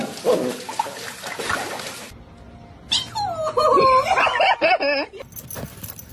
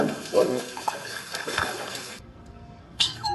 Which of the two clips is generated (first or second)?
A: second